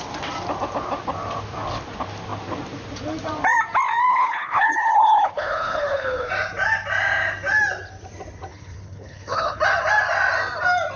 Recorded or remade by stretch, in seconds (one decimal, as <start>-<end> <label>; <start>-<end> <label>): 0.0-4.1 recorded; 4.1-6.3 remade; 6.3-8.5 recorded; 8.5-9.6 remade; 9.6-11.0 recorded